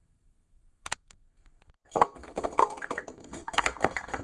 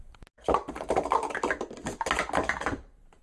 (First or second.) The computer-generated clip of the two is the first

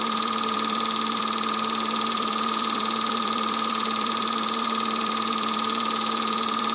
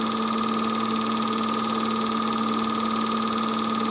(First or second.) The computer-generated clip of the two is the first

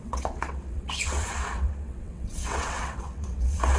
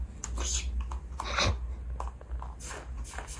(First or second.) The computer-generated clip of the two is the first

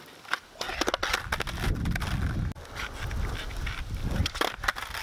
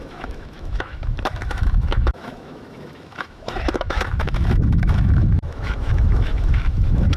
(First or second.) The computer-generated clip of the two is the second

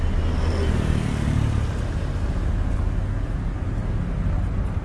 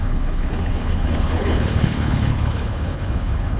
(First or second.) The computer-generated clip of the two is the second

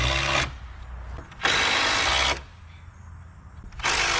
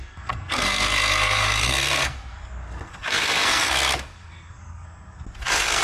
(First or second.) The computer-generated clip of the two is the second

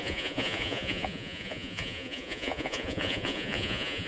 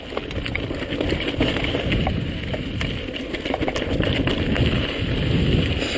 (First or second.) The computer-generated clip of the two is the first